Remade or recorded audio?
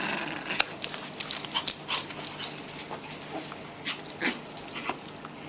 recorded